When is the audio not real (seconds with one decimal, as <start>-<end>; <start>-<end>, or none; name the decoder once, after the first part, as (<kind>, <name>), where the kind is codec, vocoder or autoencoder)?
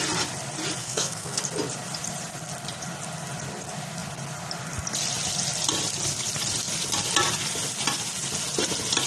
0.8-1.4 (codec, SNAC)